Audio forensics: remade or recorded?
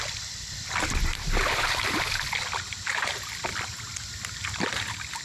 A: recorded